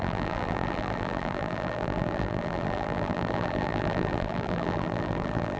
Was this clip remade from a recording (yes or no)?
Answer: yes